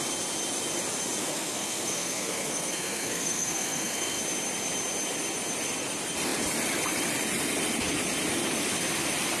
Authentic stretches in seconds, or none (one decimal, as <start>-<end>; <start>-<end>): 0.0-1.2; 4.2-9.4